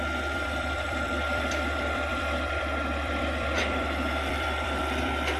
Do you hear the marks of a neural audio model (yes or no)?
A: yes